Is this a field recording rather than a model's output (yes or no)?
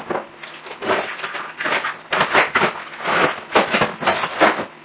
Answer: yes